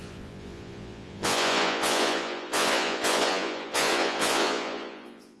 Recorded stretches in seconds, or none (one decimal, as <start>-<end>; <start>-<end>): none